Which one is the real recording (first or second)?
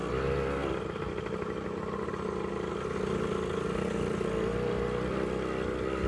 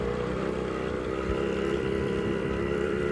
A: first